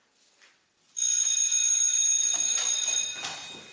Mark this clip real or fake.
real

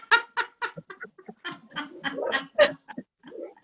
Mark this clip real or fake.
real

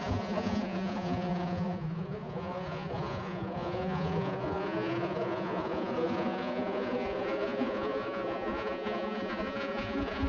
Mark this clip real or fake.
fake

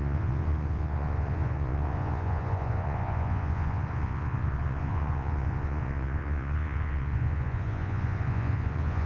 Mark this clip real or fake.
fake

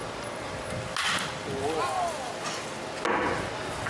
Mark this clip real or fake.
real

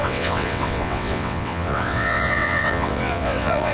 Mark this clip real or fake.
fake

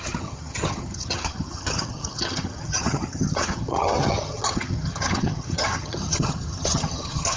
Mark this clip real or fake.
fake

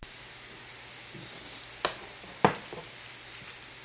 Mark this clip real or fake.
real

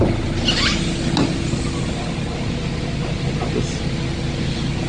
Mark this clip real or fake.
real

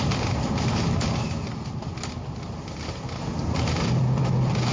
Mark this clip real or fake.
fake